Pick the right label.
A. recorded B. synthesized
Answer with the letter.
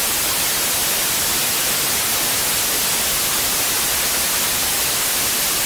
A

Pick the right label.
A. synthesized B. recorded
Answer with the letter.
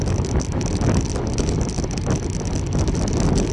B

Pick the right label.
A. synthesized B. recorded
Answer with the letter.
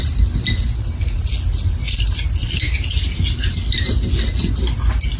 B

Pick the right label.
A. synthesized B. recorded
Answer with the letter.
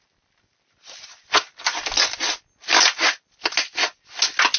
B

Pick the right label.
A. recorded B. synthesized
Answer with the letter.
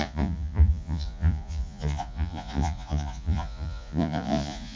B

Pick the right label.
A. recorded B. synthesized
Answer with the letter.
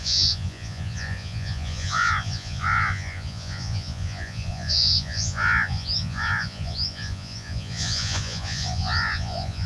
B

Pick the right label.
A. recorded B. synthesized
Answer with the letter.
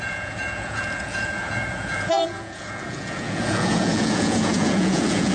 B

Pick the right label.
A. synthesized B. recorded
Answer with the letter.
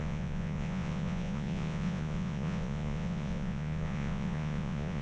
A